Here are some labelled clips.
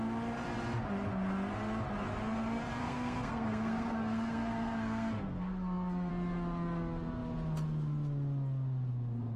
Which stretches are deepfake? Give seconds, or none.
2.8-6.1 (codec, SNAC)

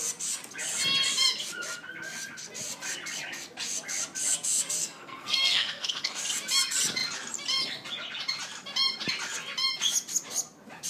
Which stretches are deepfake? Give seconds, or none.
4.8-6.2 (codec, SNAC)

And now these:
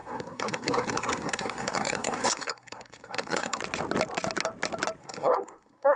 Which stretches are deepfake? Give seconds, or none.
0.0-3.6 (codec, SNAC); 5.0-6.0